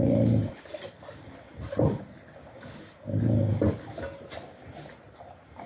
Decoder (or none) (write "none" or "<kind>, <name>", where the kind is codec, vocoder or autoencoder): none